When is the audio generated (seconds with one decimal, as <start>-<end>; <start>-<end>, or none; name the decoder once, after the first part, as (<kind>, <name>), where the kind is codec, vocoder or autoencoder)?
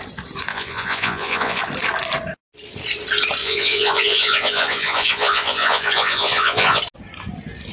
0.5-1.6 (vocoder, Vocos); 3.4-6.8